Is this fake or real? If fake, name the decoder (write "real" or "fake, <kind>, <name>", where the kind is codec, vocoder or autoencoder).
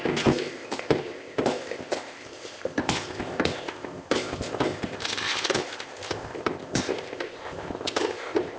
fake, codec, ZipCodec